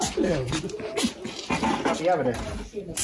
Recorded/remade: recorded